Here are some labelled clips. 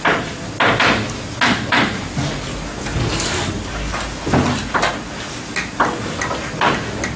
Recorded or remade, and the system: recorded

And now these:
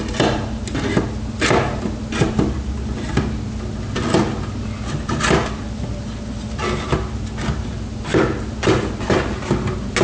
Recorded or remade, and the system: recorded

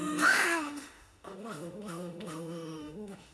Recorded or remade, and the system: remade, autoencoder, DAC-VAE